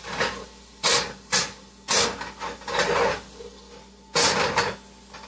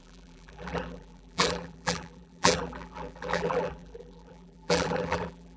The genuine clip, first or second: first